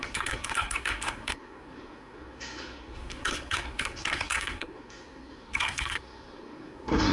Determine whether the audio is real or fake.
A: fake